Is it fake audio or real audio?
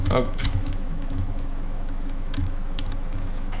fake